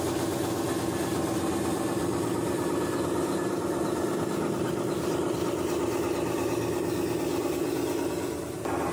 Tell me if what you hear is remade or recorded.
recorded